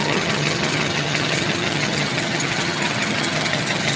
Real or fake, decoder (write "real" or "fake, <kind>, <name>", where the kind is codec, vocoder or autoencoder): fake, vocoder, HiFi-GAN